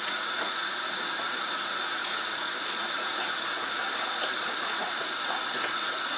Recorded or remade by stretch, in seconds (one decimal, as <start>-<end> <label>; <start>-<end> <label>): 0.0-6.2 remade